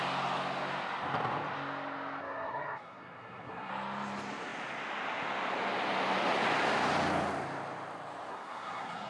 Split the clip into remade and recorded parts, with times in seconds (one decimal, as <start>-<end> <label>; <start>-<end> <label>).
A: 0.0-2.2 recorded; 2.2-3.7 remade; 3.7-8.3 recorded; 8.3-9.1 remade